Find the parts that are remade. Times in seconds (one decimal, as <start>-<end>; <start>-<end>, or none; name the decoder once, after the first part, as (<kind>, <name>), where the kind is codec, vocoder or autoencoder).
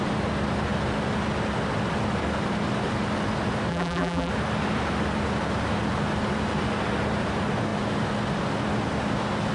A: 3.7-4.3 (vocoder, BigVGAN v2)